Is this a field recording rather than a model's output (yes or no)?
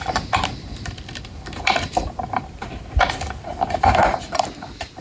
no